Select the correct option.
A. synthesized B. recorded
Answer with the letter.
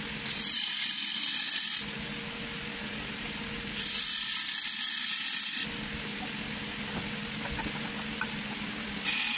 B